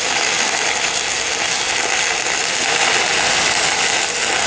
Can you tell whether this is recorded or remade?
recorded